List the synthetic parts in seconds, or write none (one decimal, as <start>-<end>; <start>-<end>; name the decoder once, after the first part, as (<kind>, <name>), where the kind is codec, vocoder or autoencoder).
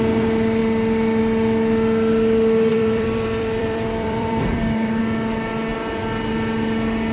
2.7-5.0 (vocoder, BigVGAN v2)